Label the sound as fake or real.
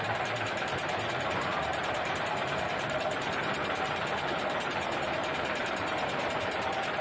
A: fake